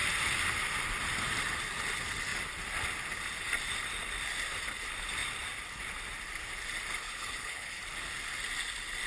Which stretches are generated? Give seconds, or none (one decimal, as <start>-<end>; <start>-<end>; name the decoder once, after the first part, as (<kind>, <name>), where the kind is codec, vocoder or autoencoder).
7.1-7.8 (codec, HILCodec)